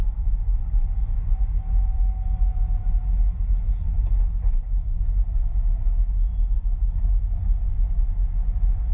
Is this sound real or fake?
real